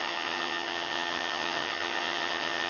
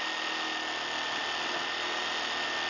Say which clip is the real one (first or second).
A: second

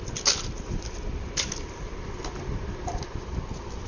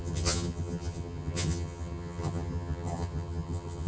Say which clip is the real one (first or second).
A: first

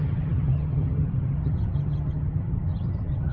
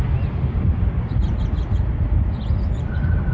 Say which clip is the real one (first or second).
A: second